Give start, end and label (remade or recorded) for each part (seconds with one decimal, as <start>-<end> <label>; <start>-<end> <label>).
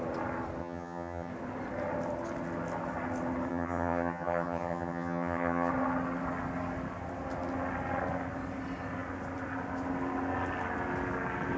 0.0-0.6 recorded; 0.6-1.3 remade; 1.3-3.5 recorded; 3.5-5.7 remade; 5.7-11.6 recorded